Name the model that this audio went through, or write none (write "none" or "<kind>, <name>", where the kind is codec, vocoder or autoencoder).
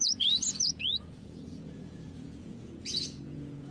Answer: vocoder, Vocos